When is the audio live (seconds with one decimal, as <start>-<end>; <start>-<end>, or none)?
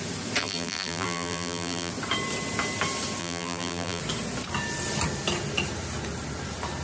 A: 0.0-0.4; 1.9-3.2; 4.0-6.8